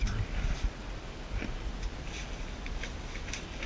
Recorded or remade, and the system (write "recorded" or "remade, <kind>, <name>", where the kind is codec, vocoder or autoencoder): recorded